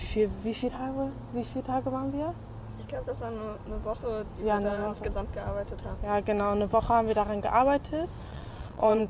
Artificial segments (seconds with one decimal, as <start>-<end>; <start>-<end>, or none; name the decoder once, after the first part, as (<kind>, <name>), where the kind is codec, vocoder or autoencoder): 8.3-9.1 (vocoder, WaveNeXt)